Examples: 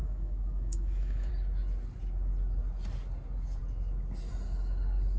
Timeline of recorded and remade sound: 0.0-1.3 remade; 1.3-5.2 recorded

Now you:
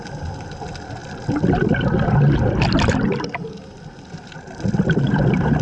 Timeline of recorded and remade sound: 0.0-5.6 recorded

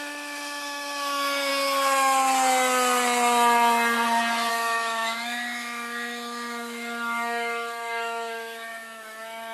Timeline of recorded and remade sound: 0.0-1.5 remade; 1.5-4.5 recorded; 4.5-9.5 remade

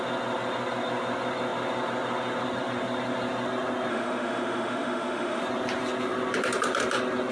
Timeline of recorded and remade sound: 0.0-3.9 recorded; 3.9-5.4 remade; 5.4-7.3 recorded

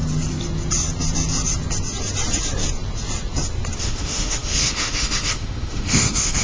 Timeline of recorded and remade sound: 0.0-3.8 recorded; 3.8-6.4 remade